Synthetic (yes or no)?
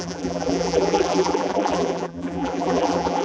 yes